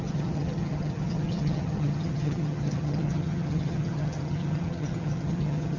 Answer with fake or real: fake